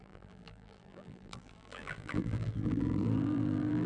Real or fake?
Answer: fake